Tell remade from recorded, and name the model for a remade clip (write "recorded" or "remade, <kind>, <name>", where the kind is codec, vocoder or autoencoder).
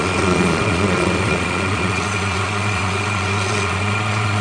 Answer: remade, vocoder, Vocos